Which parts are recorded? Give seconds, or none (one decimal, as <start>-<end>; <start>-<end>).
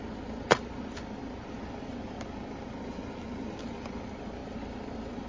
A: 1.2-3.6